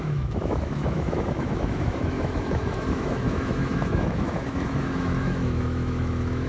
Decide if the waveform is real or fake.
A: fake